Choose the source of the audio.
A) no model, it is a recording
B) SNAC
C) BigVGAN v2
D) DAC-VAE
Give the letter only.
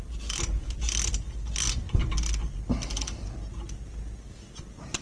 A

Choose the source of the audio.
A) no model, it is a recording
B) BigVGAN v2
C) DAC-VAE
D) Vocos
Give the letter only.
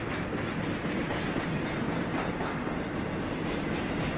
A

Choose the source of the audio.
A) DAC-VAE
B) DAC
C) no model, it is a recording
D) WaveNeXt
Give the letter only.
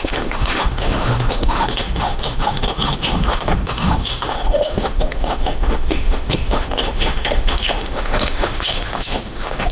A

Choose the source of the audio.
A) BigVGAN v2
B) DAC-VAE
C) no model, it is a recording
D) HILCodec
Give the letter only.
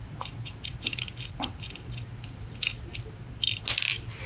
C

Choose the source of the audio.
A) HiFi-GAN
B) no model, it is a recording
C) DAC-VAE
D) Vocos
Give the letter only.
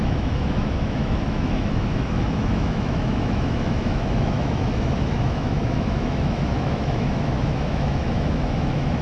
C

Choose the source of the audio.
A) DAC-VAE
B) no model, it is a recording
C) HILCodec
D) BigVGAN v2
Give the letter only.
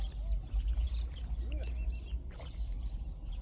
B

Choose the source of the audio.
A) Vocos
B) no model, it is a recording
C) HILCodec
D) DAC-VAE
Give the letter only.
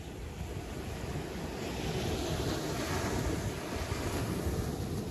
B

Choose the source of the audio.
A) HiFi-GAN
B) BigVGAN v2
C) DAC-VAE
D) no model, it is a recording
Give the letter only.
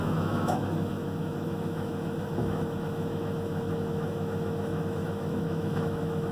C